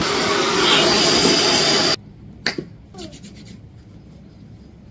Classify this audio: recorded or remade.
recorded